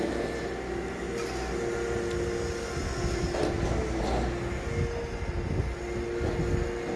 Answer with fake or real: real